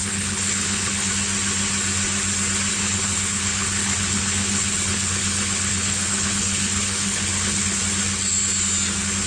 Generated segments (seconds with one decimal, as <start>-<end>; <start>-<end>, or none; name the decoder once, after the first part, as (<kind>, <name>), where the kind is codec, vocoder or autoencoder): 0.0-1.1 (codec, HILCodec); 2.7-7.8